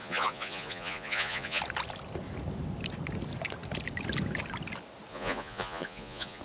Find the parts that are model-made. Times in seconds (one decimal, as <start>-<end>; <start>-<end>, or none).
0.0-1.6; 5.1-6.4